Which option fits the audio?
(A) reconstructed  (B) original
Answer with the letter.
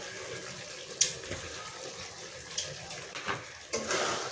B